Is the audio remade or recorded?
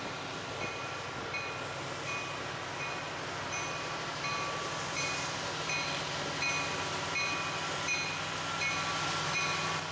recorded